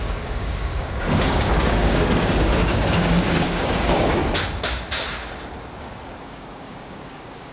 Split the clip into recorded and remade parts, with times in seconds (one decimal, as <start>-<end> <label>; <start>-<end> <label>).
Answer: 0.0-4.2 remade; 4.2-5.8 recorded; 5.8-7.5 remade

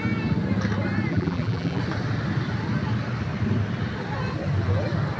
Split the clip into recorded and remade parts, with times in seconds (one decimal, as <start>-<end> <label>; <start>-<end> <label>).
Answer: 0.0-1.1 recorded; 1.1-1.8 remade; 1.8-5.2 recorded

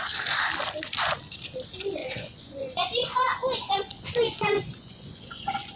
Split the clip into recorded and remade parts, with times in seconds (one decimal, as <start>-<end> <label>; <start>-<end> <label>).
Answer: 0.0-2.0 recorded; 2.0-5.8 remade

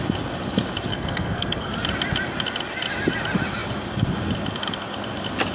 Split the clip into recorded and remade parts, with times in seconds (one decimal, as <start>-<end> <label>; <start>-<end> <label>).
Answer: 0.0-0.9 recorded; 0.9-1.7 remade; 1.7-5.5 recorded

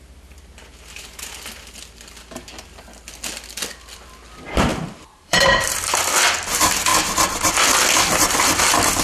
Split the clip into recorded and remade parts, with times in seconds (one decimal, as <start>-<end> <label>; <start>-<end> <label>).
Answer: 0.0-4.7 recorded; 4.7-6.0 remade; 6.0-9.0 recorded

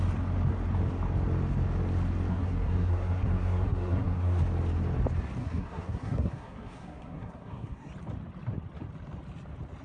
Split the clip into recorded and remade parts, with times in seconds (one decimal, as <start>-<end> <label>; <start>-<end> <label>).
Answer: 0.0-2.3 recorded; 2.3-4.4 remade; 4.4-5.4 recorded; 5.4-7.9 remade; 7.9-9.8 recorded

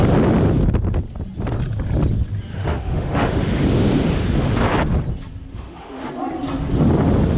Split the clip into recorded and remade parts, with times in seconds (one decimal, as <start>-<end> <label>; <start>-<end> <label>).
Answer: 0.0-2.5 recorded; 2.5-3.6 remade; 3.6-5.5 recorded; 5.5-6.1 remade; 6.1-7.4 recorded